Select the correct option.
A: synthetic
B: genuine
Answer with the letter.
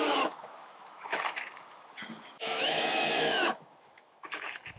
A